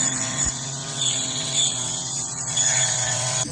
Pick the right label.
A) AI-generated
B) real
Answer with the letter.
A